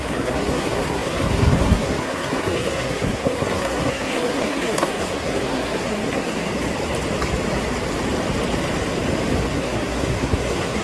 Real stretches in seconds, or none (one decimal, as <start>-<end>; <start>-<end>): 6.5-9.5